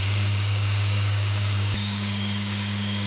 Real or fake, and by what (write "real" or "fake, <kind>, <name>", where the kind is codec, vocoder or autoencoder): fake, codec, DAC